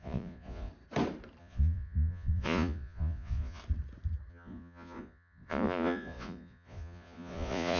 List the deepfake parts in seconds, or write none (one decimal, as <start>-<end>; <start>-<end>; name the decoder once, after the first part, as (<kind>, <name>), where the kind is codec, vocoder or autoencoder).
0.0-0.7 (vocoder, Vocos); 1.4-3.6; 4.3-7.8